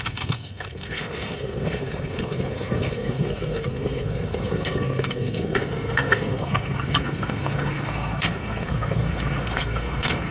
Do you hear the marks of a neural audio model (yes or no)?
yes